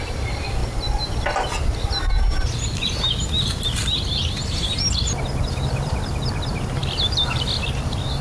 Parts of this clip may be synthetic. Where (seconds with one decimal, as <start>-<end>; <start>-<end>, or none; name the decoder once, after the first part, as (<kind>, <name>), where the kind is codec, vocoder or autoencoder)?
0.0-0.6 (vocoder, BigVGAN v2); 4.9-8.2